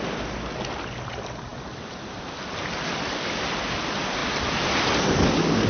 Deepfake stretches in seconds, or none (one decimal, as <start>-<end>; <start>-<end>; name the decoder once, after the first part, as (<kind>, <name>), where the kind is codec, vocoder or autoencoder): none

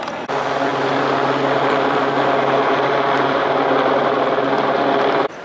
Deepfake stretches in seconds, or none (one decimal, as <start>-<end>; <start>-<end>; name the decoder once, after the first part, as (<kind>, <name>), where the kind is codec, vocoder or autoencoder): none

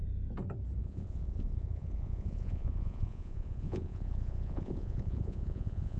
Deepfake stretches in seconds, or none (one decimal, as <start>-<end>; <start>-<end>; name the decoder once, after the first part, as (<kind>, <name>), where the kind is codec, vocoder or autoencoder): 0.8-6.0 (vocoder, Vocos)

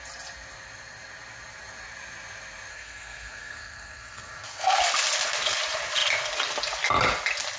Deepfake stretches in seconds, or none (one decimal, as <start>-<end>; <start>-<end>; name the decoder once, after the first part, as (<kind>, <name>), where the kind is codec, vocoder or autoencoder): 2.7-4.8 (codec, SNAC)